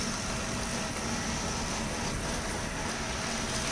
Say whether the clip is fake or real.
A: real